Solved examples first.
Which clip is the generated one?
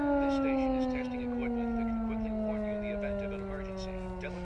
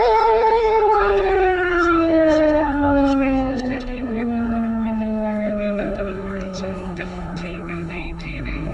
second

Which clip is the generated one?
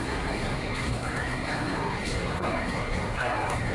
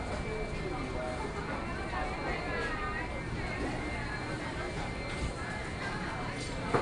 first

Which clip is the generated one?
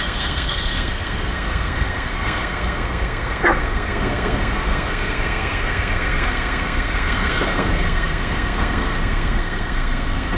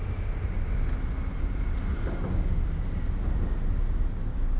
first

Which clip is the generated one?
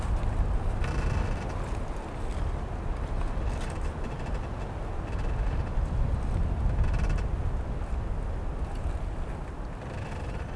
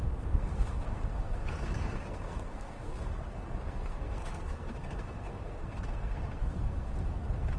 second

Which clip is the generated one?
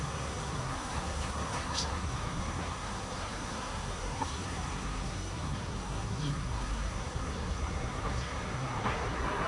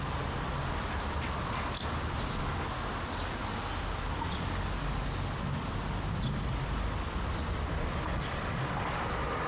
first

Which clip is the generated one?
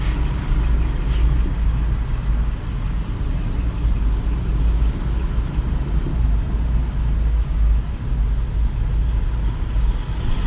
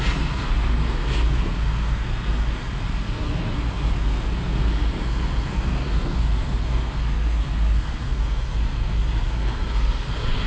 second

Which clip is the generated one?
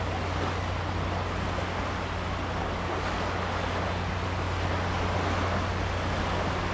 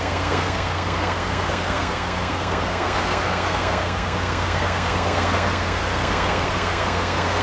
second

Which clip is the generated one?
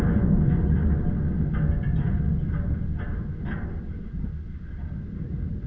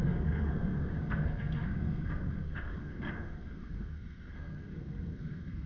second